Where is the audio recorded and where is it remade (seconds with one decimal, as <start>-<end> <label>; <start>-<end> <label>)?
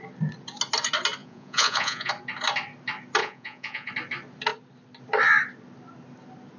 0.0-1.2 recorded; 1.2-2.1 remade; 2.1-3.2 recorded; 3.2-3.9 remade; 3.9-6.6 recorded